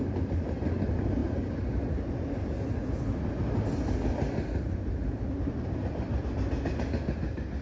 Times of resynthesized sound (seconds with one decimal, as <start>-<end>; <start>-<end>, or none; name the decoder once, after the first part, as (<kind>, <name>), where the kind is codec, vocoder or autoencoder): none